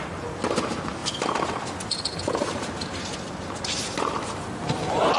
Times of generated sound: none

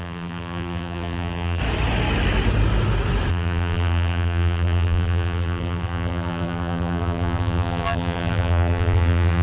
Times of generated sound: 0.0-1.6 (vocoder, BigVGAN v2); 3.3-9.4

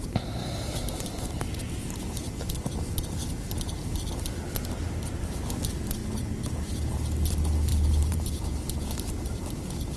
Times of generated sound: 0.4-1.6 (vocoder, BigVGAN v2); 7.7-8.4

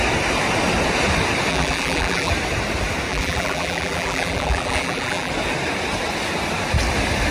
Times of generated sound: 1.5-2.3 (vocoder, BigVGAN v2); 3.1-5.3

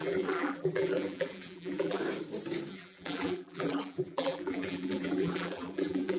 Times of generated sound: 0.0-2.0 (vocoder, BigVGAN v2); 2.7-6.2

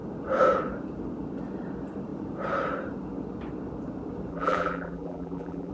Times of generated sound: 4.3-5.7 (vocoder, BigVGAN v2)

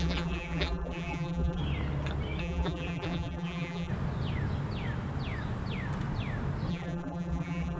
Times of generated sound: 0.0-1.6 (vocoder, BigVGAN v2); 2.4-3.9; 6.7-7.8